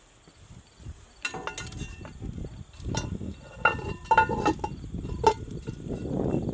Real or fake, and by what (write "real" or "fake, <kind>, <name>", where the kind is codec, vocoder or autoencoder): real